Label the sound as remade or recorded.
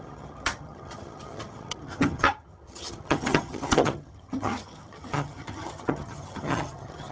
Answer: remade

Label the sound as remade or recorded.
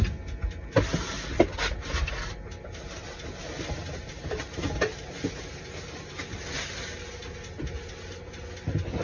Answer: recorded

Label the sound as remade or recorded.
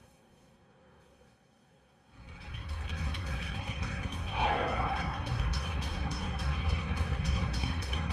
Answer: remade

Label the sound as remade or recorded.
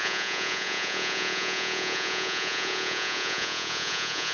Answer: remade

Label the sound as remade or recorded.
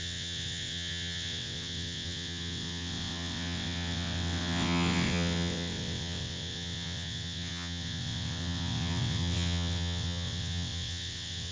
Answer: remade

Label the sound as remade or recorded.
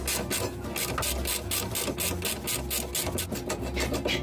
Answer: recorded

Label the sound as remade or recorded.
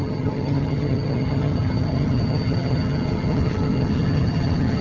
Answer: remade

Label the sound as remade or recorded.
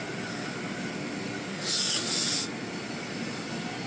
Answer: recorded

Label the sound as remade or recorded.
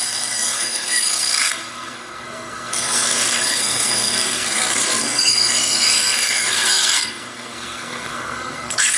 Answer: remade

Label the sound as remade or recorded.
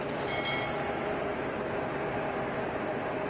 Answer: remade